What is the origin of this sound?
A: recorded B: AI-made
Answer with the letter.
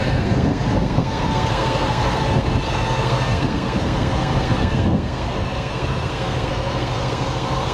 B